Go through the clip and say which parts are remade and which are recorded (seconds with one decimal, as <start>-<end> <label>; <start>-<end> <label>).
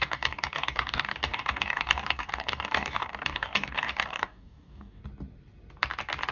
0.0-5.0 remade; 5.0-6.3 recorded